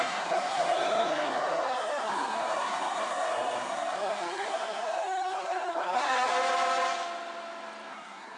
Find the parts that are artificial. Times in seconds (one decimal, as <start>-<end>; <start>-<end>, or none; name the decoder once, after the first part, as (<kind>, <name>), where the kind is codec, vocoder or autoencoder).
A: 0.0-6.3 (codec, SNAC); 7.9-8.4